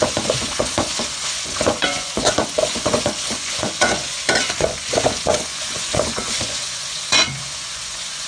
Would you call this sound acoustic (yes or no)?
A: no